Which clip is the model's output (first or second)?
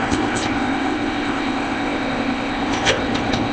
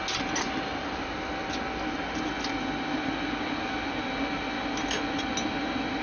first